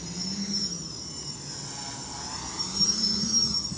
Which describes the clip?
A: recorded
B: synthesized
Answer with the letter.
A